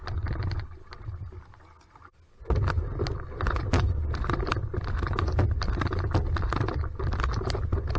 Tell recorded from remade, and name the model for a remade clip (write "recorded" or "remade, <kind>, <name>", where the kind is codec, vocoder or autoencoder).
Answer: recorded